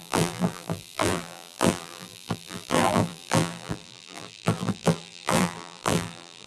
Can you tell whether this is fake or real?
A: fake